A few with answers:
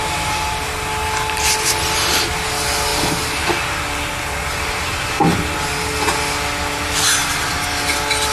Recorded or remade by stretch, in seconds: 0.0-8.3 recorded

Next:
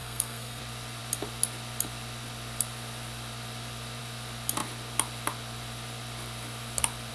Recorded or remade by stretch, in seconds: 0.0-0.6 remade; 0.6-7.1 recorded

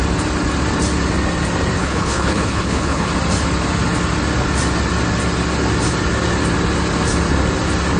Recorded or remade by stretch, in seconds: 0.0-1.8 recorded; 1.8-3.1 remade; 3.1-8.0 recorded